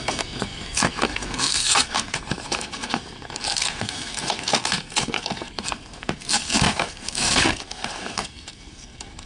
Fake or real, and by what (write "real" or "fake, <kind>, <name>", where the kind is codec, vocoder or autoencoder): fake, codec, SNAC